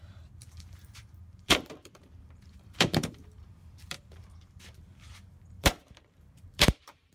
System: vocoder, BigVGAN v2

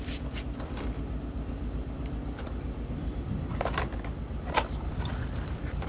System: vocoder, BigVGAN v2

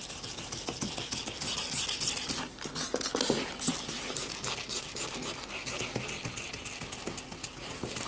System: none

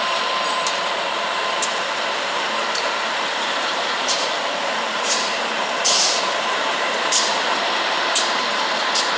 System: vocoder, BigVGAN v2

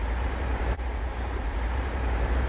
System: vocoder, BigVGAN v2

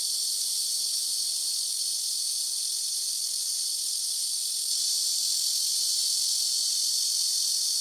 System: vocoder, BigVGAN v2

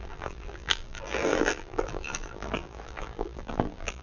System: vocoder, BigVGAN v2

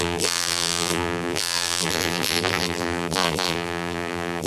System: vocoder, BigVGAN v2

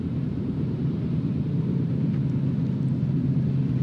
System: vocoder, BigVGAN v2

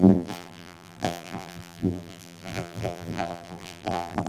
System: vocoder, BigVGAN v2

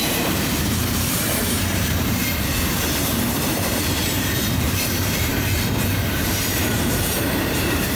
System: vocoder, BigVGAN v2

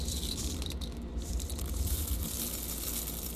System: vocoder, BigVGAN v2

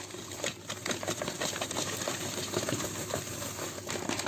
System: vocoder, BigVGAN v2